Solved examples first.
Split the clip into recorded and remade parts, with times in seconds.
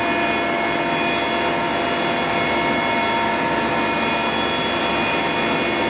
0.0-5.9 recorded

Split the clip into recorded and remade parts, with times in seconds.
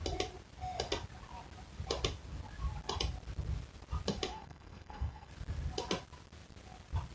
0.0-4.3 recorded; 4.3-5.3 remade; 5.3-7.1 recorded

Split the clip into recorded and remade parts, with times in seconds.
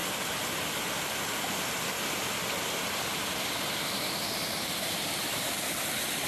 0.0-6.3 recorded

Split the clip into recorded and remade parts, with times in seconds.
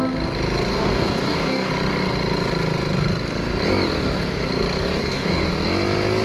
0.0-0.7 recorded; 0.7-1.7 remade; 1.7-5.0 recorded; 5.0-5.5 remade; 5.5-6.2 recorded